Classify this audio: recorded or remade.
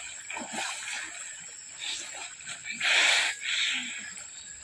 recorded